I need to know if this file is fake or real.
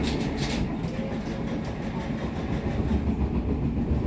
real